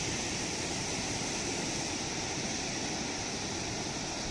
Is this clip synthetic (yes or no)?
no